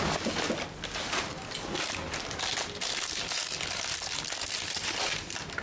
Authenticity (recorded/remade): recorded